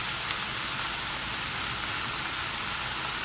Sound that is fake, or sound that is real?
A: real